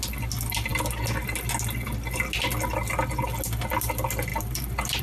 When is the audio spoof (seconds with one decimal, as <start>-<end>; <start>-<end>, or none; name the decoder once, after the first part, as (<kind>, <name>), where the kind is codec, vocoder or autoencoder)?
none